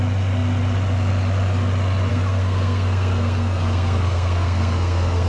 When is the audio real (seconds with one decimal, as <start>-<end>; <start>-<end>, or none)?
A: 0.0-2.1